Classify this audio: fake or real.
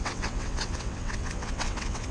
fake